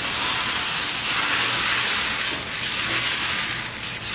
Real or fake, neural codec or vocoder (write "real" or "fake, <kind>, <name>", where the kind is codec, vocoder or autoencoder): real